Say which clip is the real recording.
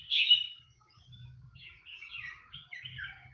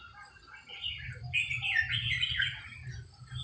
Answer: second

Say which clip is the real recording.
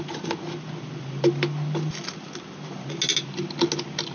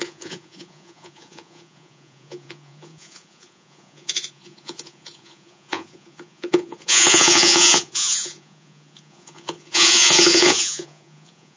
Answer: first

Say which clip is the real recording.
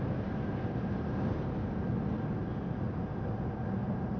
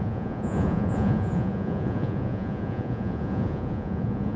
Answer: first